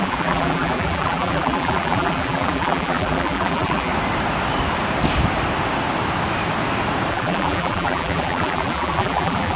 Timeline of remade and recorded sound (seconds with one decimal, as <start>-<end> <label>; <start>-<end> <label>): 0.0-3.9 remade; 3.9-7.1 recorded; 7.1-9.6 remade